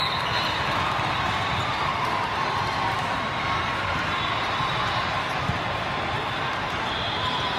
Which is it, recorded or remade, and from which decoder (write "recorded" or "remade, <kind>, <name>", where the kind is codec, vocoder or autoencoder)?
remade, vocoder, BigVGAN v2